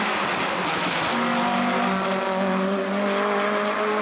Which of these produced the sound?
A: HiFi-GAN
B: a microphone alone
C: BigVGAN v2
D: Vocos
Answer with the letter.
B